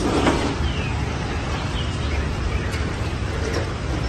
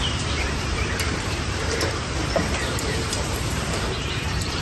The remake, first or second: second